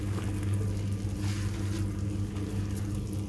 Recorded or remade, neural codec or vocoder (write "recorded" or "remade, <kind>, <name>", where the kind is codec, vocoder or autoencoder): recorded